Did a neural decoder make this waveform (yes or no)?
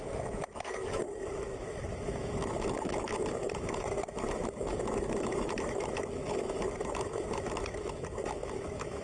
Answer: yes